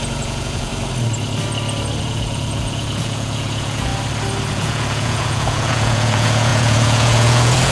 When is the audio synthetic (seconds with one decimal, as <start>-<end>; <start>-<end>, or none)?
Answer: 0.0-0.7; 2.0-3.9; 4.5-7.7